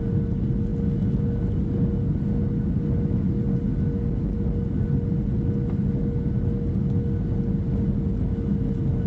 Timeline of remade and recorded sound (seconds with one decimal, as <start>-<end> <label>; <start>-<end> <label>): 0.0-9.1 recorded